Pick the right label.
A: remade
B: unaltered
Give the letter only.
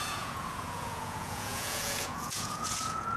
A